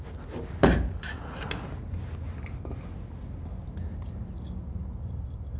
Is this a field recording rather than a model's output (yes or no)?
yes